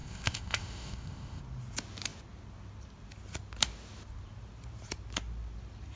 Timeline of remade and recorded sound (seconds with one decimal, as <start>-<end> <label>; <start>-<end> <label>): 0.0-1.4 remade; 1.4-6.0 recorded